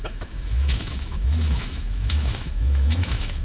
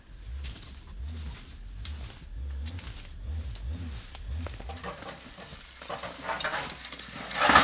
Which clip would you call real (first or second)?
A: second